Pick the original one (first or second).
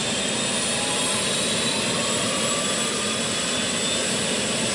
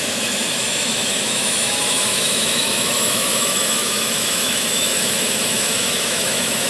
first